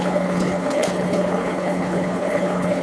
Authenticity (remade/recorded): remade